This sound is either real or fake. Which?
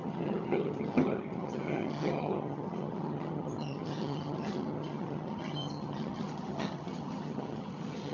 fake